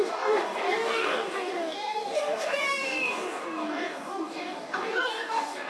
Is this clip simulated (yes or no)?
yes